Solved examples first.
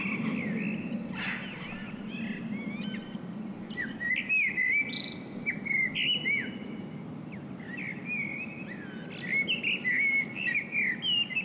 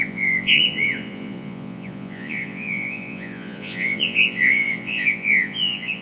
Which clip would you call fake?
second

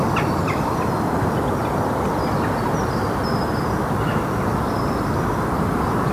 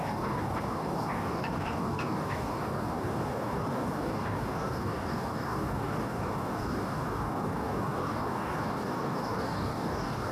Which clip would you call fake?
second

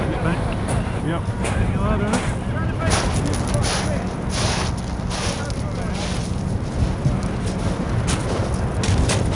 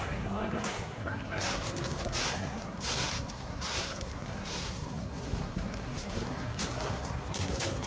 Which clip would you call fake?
second